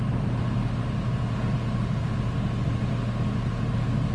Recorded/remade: recorded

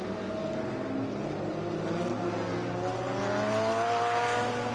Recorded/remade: recorded